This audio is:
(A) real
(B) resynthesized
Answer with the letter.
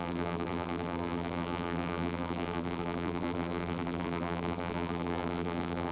B